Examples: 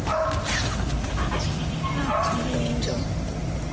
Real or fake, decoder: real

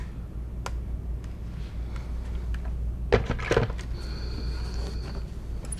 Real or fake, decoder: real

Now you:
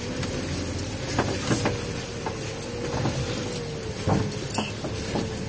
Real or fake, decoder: real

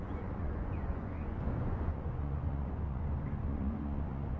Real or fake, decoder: fake, vocoder, Vocos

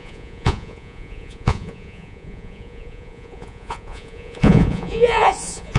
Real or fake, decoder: fake, vocoder, Vocos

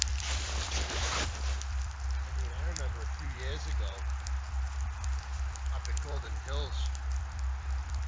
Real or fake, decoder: fake, vocoder, BigVGAN v2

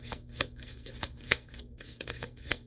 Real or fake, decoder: fake, codec, SNAC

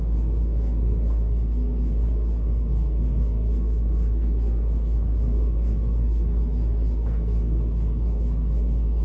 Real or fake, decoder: fake, codec, SNAC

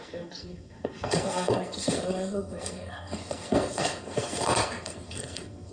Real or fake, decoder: fake, codec, SNAC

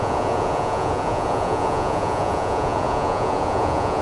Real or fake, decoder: fake, vocoder, Vocos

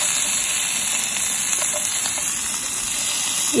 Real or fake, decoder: real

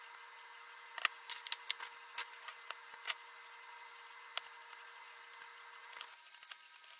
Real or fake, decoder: real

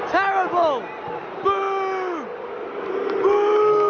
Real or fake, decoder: real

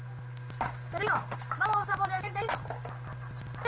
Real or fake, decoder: real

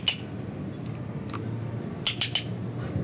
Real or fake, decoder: real